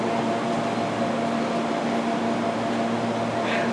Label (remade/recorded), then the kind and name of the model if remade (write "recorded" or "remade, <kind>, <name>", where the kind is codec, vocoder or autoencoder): recorded